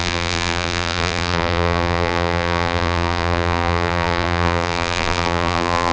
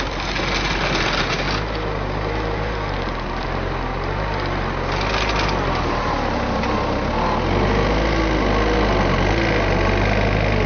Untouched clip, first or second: second